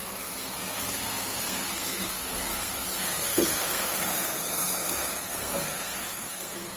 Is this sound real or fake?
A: fake